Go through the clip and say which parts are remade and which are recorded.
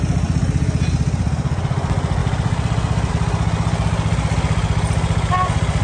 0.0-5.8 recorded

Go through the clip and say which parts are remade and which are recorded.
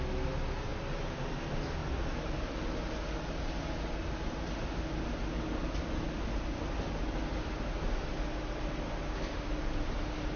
0.0-7.2 recorded; 7.2-9.6 remade; 9.6-10.4 recorded